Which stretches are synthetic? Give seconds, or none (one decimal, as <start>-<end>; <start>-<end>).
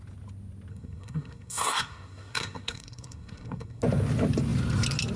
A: 0.7-3.8